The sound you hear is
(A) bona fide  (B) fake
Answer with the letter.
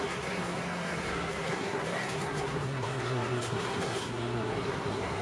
B